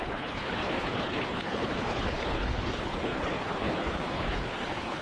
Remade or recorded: remade